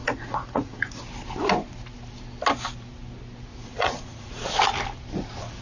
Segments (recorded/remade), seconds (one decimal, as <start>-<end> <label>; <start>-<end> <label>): 0.0-1.0 remade; 1.0-3.5 recorded; 3.5-4.4 remade; 4.4-5.6 recorded